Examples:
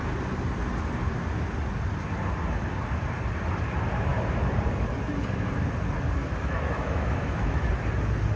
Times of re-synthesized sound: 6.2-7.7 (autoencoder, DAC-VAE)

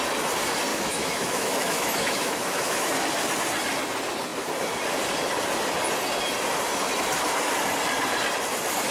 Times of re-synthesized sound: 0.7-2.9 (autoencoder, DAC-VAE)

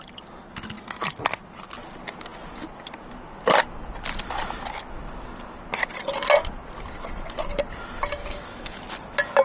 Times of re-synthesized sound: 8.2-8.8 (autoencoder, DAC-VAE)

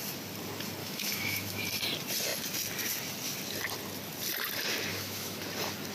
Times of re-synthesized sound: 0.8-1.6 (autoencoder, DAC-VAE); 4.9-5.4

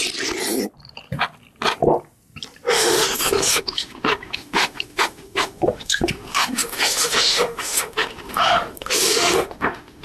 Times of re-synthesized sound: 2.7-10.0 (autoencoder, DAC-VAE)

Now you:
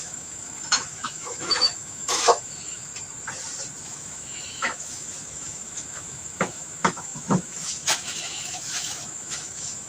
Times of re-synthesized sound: 0.0-2.9 (autoencoder, DAC-VAE); 3.8-9.9